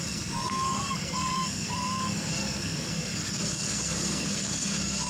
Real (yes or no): no